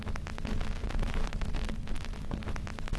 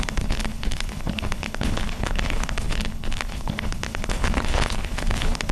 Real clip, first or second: first